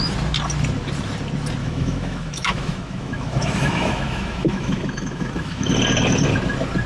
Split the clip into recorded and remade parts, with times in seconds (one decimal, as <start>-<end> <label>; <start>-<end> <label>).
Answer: 0.0-1.6 recorded; 1.6-5.7 remade; 5.7-6.9 recorded